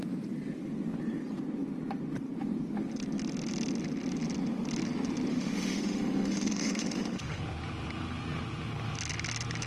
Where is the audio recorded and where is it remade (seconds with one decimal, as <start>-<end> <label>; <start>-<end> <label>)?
0.0-5.3 recorded; 5.3-7.4 remade; 7.4-9.7 recorded